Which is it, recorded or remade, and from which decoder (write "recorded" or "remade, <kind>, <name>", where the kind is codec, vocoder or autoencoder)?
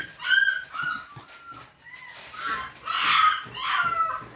recorded